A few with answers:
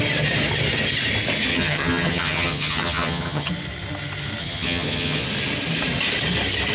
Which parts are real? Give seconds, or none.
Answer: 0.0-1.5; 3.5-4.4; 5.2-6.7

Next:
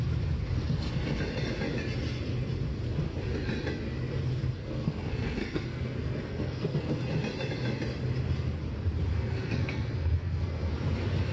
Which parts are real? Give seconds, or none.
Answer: 0.0-4.4; 7.0-9.1; 10.7-11.3

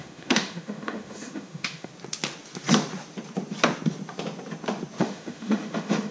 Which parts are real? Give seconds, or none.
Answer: 1.9-5.0

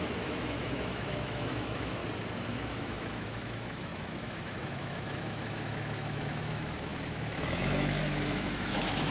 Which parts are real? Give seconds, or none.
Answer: 2.0-2.5

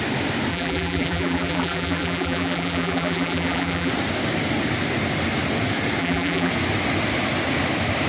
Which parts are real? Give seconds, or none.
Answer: 0.0-0.5; 3.9-6.0; 6.5-8.1

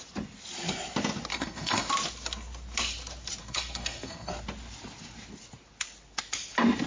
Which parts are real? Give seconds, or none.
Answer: 0.0-1.3; 1.9-3.4; 4.3-6.9

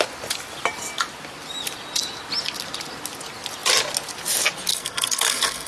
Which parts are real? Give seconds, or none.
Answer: 0.0-4.7

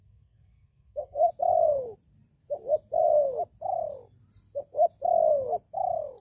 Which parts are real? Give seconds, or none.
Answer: 1.3-6.2